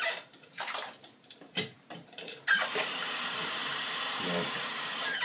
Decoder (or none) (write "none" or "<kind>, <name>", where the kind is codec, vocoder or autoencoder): vocoder, BigVGAN v2